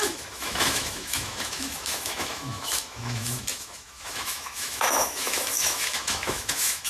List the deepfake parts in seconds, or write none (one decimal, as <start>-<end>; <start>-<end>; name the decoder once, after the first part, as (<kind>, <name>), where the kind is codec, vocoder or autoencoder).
0.0-6.9 (autoencoder, DAC-VAE)